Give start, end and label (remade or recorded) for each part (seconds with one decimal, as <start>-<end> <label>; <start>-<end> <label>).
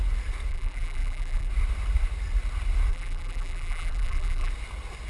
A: 0.0-0.5 recorded; 0.5-1.5 remade; 1.5-2.9 recorded; 2.9-4.5 remade; 4.5-5.1 recorded